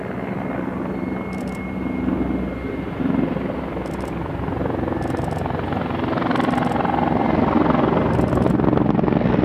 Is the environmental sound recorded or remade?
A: recorded